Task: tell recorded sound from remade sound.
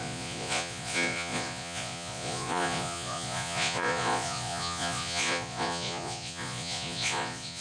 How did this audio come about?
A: remade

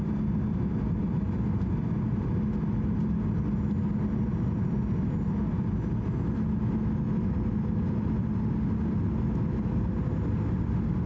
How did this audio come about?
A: recorded